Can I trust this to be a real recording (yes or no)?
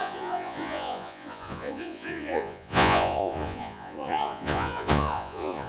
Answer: no